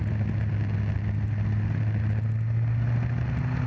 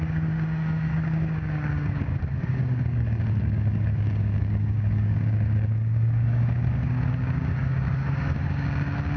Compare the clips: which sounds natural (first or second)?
first